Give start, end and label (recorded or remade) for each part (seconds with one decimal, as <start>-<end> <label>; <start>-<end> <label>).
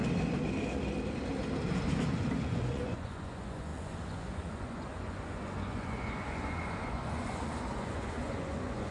0.0-2.4 recorded; 2.4-8.9 remade